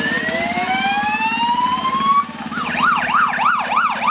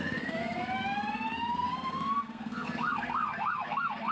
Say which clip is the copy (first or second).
second